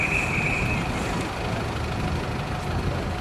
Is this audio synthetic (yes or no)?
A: no